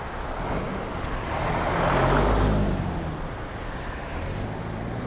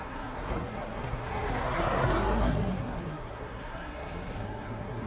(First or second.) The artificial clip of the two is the second